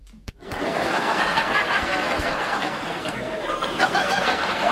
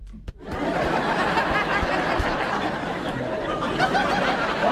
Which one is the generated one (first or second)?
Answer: first